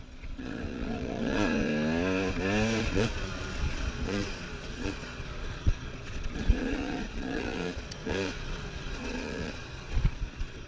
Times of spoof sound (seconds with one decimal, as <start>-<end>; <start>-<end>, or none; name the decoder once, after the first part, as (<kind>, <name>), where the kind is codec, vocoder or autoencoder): 0.0-1.7 (vocoder, Vocos); 2.8-10.7